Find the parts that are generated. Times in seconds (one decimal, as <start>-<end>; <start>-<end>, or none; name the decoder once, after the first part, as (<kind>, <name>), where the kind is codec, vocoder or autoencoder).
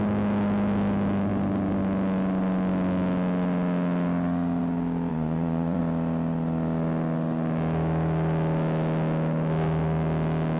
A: 5.1-5.8 (vocoder, Vocos)